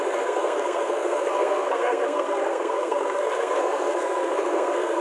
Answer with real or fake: fake